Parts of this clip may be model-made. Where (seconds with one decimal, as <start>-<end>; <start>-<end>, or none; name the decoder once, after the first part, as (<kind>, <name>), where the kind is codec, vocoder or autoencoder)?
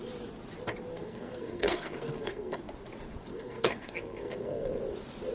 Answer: 0.9-2.6 (codec, SNAC); 3.3-4.8